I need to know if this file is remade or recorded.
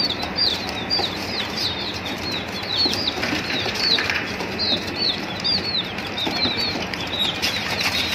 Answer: remade